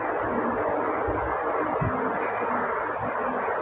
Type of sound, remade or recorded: recorded